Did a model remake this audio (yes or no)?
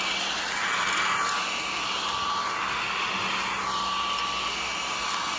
no